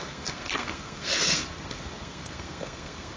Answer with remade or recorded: remade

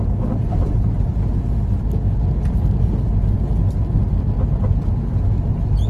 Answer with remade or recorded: recorded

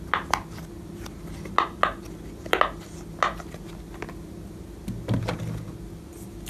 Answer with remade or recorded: recorded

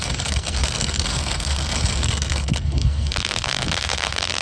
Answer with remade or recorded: remade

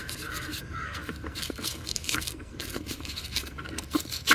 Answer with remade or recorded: remade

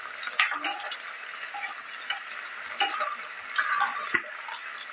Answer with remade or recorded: recorded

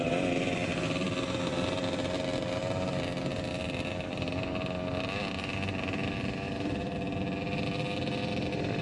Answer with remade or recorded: recorded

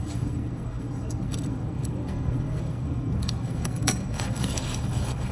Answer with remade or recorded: remade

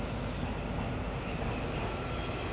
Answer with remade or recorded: recorded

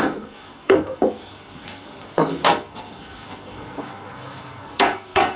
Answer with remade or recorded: remade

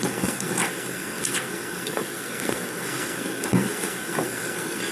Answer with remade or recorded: remade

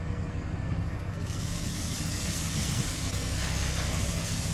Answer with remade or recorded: remade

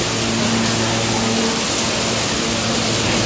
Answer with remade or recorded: recorded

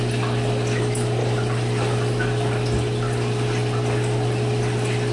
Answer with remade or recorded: recorded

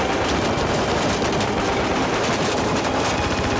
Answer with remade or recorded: recorded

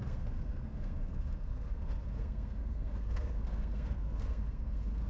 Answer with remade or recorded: remade